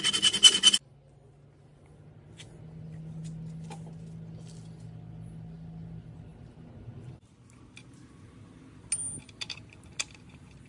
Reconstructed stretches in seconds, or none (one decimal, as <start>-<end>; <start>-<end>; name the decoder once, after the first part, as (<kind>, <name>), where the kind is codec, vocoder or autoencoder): none